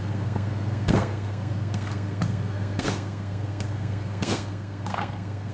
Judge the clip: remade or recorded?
remade